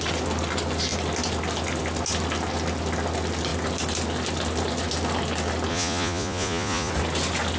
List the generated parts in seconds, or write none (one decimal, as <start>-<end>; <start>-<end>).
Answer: 5.7-6.9